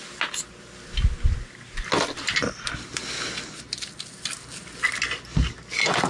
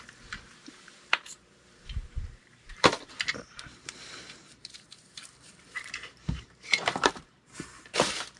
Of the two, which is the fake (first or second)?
second